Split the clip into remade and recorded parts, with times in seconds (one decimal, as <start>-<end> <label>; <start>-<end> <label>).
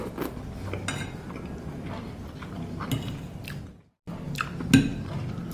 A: 0.0-5.5 recorded